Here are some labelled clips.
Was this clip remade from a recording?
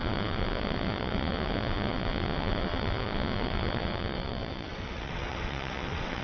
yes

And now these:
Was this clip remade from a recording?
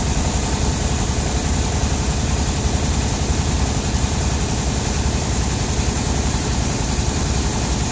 no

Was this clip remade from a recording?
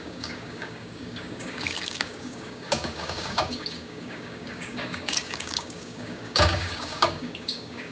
yes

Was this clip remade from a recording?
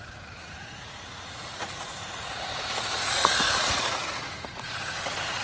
yes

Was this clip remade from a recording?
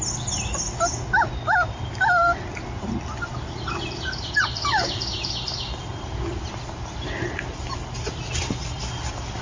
no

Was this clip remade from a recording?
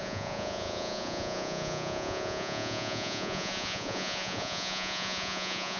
yes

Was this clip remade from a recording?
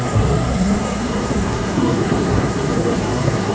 yes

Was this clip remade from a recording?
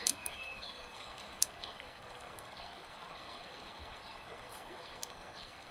yes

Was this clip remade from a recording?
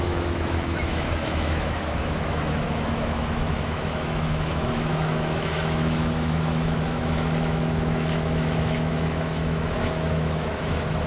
yes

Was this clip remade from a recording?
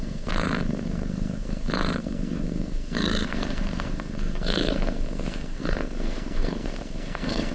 yes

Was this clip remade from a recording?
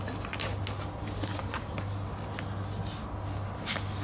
no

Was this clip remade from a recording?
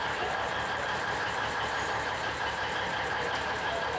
yes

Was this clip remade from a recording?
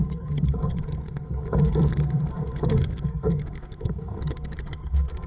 yes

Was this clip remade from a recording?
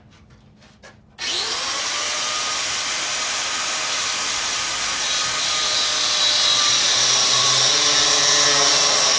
no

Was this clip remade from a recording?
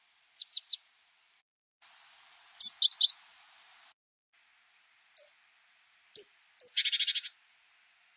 no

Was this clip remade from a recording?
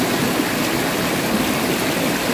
no